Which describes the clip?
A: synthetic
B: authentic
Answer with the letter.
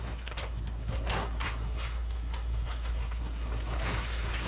A